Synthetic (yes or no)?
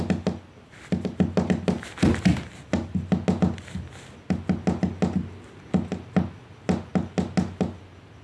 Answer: no